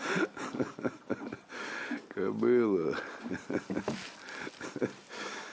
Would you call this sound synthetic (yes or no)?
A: no